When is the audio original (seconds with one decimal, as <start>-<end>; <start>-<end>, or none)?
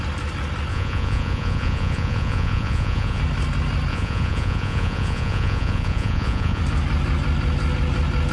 0.0-0.7; 3.2-3.9; 6.6-8.3